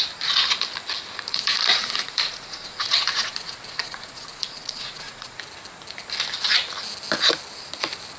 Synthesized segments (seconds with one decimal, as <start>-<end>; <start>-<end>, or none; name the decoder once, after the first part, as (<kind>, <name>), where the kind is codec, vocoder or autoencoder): 1.3-5.4 (vocoder, Vocos)